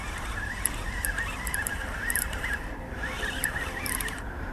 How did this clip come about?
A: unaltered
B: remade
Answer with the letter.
B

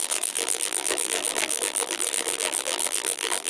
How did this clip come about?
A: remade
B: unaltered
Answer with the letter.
A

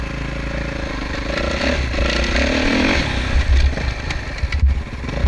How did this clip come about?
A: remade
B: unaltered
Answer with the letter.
B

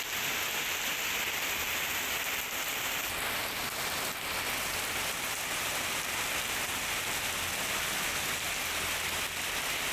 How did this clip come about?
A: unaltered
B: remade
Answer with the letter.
A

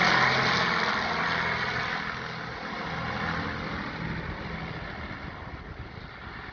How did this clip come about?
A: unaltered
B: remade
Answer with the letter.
A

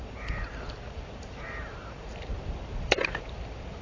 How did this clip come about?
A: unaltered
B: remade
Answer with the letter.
B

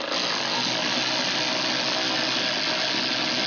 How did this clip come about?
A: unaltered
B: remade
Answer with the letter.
A